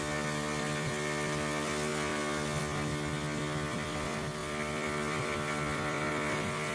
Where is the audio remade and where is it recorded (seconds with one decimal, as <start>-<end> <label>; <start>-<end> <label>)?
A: 0.0-4.4 recorded; 4.4-6.1 remade; 6.1-6.7 recorded